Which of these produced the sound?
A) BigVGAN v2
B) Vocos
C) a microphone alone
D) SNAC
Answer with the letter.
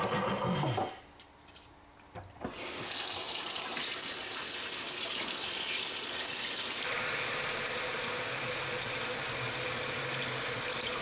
C